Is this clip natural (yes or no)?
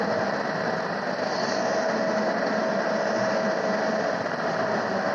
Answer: yes